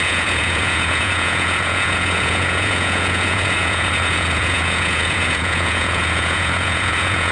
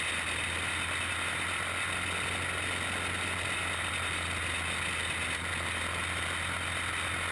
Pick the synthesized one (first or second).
first